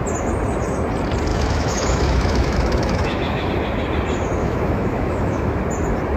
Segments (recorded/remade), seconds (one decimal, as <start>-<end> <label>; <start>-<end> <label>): 0.0-1.3 recorded; 1.3-3.5 remade; 3.5-4.4 recorded; 4.4-5.6 remade; 5.6-6.2 recorded